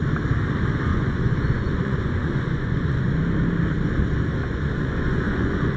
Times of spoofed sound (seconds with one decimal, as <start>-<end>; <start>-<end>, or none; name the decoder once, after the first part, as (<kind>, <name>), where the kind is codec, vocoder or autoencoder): 0.9-3.2 (vocoder, Vocos); 4.4-5.8